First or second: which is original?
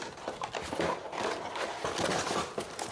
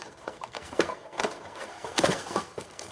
first